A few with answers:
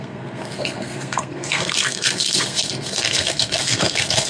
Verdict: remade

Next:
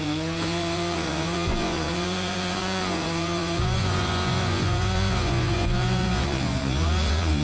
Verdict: remade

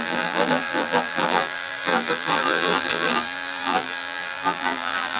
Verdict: remade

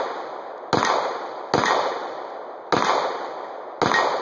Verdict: recorded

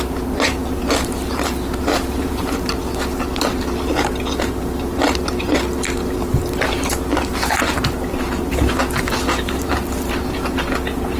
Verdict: remade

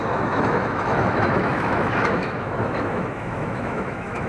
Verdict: remade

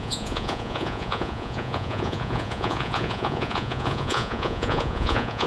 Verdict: remade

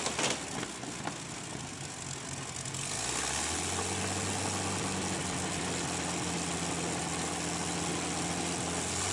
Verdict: recorded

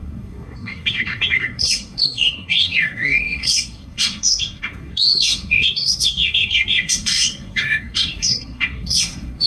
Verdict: remade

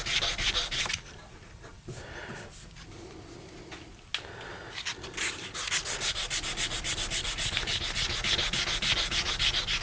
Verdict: recorded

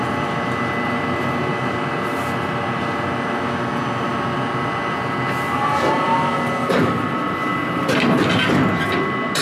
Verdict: recorded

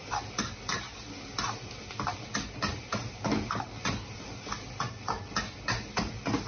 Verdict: recorded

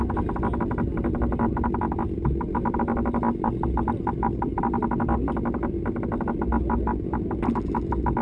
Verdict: recorded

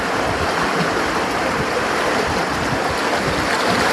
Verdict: recorded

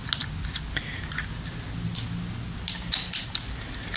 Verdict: recorded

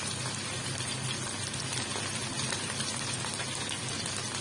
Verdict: recorded